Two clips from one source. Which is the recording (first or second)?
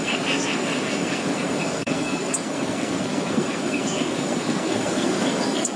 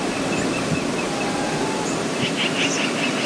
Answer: second